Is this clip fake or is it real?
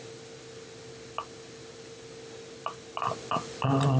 real